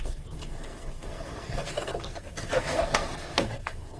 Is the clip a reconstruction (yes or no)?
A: yes